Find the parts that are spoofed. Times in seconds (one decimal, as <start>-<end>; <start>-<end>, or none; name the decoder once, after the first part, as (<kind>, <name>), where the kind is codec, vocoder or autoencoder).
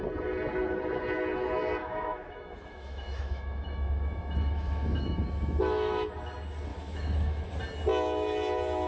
1.8-6.1 (autoencoder, DAC-VAE); 6.7-7.5